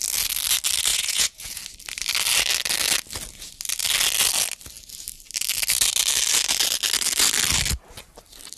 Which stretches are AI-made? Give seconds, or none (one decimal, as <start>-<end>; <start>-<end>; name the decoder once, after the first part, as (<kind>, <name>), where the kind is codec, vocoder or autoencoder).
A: 0.9-1.6 (vocoder, Vocos)